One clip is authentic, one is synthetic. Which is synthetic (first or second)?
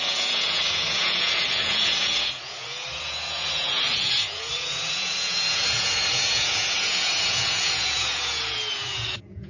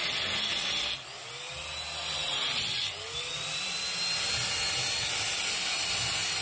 first